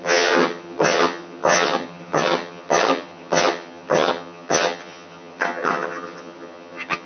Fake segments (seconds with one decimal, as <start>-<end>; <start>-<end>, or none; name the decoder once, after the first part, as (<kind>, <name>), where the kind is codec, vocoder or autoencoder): 0.0-7.1 (vocoder, HiFi-GAN)